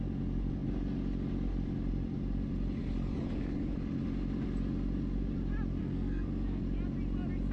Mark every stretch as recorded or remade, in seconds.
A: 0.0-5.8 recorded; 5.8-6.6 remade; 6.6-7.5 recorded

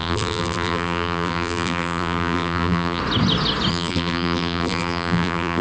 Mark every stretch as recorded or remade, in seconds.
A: 0.0-3.0 remade; 3.0-3.7 recorded; 3.7-5.6 remade

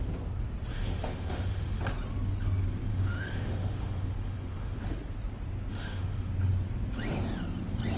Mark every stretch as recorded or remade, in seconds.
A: 0.0-0.7 recorded; 0.7-1.8 remade; 1.8-2.9 recorded; 2.9-4.8 remade; 4.8-5.7 recorded; 5.7-6.3 remade; 6.3-8.0 recorded

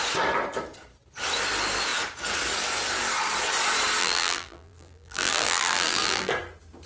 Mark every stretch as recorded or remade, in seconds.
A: 0.0-4.0 recorded; 4.0-6.3 remade; 6.3-6.9 recorded

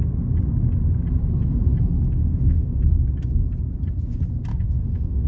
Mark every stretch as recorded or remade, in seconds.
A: 0.0-2.2 recorded; 2.2-2.8 remade; 2.8-4.5 recorded; 4.5-5.3 remade

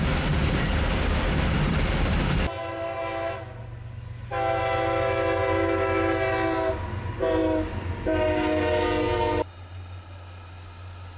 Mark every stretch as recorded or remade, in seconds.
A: 0.0-11.2 recorded